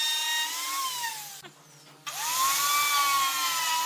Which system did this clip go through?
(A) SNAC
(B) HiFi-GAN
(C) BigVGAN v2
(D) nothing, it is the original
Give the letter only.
D